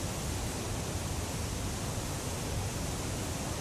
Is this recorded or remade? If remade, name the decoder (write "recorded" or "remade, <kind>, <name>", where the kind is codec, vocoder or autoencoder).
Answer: recorded